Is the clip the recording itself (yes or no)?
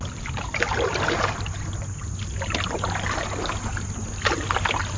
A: yes